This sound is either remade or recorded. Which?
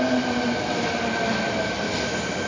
recorded